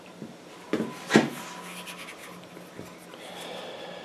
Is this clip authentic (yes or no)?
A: yes